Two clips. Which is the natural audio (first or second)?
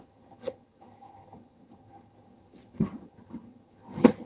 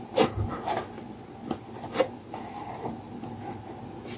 second